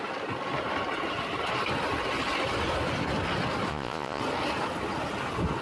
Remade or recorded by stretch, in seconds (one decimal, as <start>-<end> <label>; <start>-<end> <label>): 0.0-3.7 recorded; 3.7-4.2 remade; 4.2-5.6 recorded